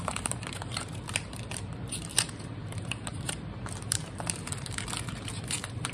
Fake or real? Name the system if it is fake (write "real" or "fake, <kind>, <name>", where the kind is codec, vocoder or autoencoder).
fake, vocoder, BigVGAN v2